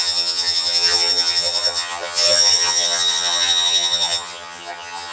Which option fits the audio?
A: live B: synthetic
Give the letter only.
B